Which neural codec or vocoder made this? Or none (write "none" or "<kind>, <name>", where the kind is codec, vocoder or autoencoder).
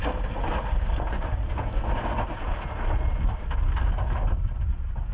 none